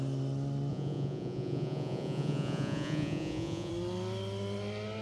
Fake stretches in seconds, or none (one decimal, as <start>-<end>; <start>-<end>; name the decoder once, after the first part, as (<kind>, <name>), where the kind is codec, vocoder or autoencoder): 0.7-3.7 (vocoder, Vocos)

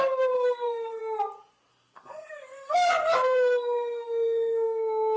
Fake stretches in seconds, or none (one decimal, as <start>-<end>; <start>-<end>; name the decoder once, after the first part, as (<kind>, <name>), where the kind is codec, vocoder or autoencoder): 0.0-1.0 (codec, SNAC); 1.7-5.2

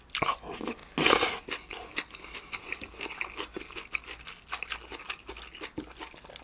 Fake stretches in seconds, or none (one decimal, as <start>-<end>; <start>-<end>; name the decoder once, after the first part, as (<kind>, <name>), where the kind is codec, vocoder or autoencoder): none

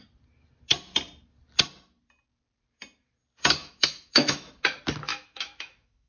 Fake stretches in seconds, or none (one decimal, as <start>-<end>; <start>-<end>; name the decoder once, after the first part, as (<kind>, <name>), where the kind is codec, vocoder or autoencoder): 3.6-4.5 (autoencoder, DAC-VAE); 5.1-6.1

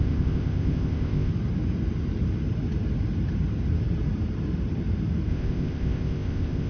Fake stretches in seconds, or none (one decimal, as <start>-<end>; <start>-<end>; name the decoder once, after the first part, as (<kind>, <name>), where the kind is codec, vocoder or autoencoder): 0.0-1.3 (codec, ZipCodec); 5.3-6.7

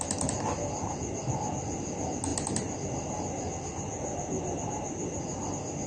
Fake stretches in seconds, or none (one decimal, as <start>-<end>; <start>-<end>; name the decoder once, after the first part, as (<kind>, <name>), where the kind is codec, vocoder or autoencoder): none

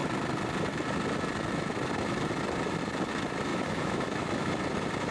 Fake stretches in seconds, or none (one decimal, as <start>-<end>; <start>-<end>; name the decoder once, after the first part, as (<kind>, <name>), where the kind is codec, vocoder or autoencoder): 3.5-4.5 (autoencoder, DAC-VAE)